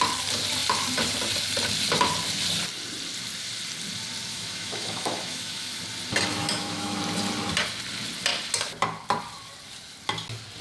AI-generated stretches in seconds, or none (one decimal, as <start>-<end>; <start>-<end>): 4.3-5.8; 6.3-7.0